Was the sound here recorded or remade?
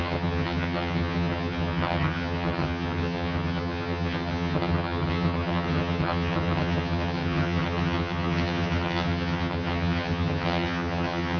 remade